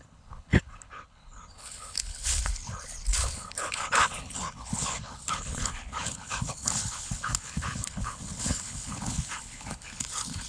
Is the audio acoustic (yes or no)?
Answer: no